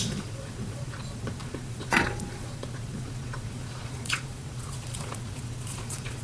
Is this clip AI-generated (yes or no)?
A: yes